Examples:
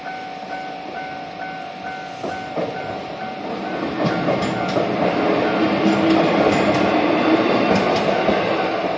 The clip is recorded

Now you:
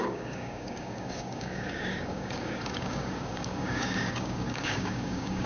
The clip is remade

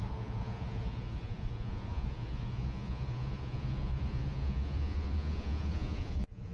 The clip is remade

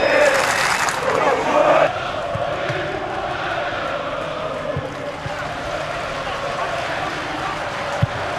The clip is remade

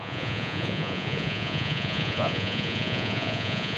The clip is remade